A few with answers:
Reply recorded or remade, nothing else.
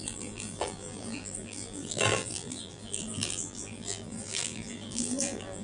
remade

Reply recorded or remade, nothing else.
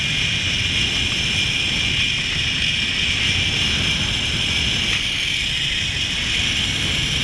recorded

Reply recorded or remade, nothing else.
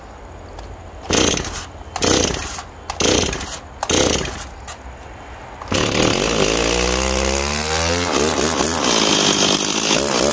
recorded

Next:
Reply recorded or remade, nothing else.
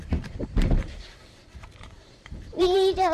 remade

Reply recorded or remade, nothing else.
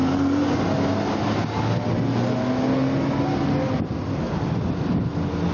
recorded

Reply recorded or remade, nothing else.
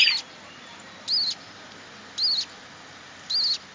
recorded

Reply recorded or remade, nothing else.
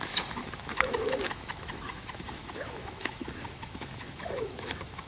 remade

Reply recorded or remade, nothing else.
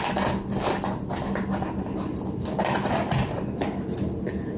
recorded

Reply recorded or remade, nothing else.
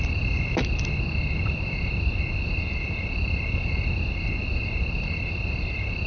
recorded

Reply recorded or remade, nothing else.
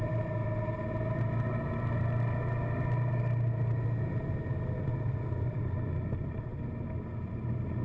recorded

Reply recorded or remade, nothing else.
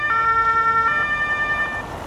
recorded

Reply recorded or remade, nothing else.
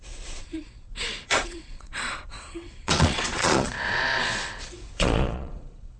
remade